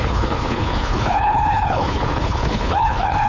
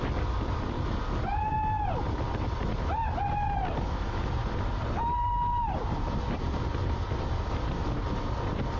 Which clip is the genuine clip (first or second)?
second